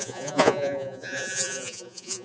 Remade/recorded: remade